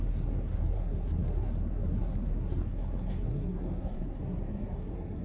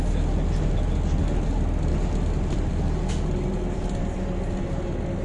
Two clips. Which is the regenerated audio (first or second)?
first